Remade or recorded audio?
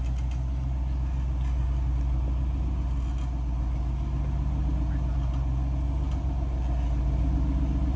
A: recorded